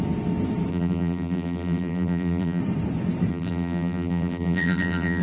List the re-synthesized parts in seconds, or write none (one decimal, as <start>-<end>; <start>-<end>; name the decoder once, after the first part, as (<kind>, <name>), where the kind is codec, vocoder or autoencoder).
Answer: 0.7-2.6 (vocoder, BigVGAN v2); 3.3-5.2